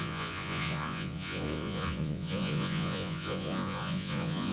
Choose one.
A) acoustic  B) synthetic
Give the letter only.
B